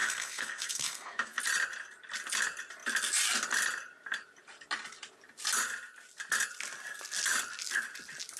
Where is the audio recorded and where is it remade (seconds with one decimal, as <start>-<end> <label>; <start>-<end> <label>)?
0.0-1.4 remade; 1.4-8.4 recorded